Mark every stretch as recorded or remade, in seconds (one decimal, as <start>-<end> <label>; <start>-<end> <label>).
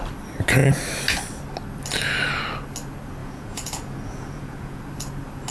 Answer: 0.0-3.2 recorded; 3.2-4.8 remade; 4.8-5.5 recorded